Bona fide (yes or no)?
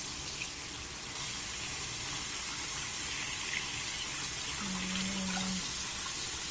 yes